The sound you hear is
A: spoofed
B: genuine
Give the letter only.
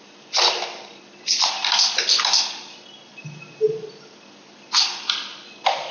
B